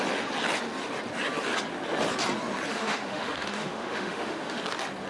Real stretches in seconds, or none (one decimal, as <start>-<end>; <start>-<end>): 0.0-2.7; 4.6-5.1